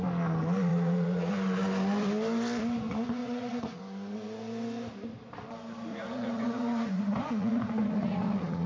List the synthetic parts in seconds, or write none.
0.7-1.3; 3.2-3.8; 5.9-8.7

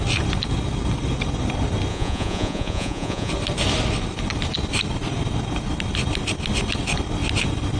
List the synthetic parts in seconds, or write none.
1.9-3.3

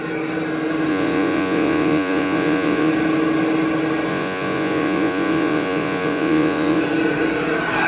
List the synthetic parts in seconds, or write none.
0.9-2.9; 4.1-6.8

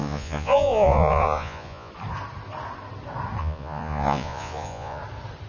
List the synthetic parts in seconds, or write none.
0.0-1.9; 3.4-5.0